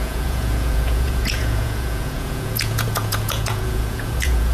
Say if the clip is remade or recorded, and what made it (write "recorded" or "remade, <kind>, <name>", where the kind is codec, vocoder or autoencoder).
remade, vocoder, Vocos